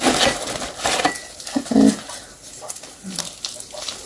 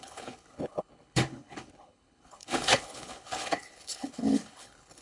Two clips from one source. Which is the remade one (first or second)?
second